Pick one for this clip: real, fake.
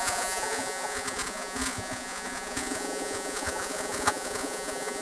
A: fake